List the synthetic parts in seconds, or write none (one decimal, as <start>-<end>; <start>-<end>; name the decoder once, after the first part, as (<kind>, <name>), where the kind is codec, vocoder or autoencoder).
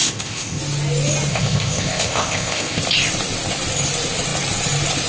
0.0-0.6 (codec, ZipCodec); 1.3-2.8